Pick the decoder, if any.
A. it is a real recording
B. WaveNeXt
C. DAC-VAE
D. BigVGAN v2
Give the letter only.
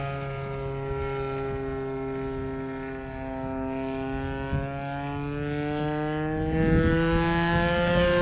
A